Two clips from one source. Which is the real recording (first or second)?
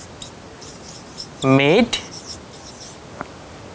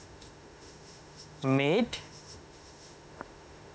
first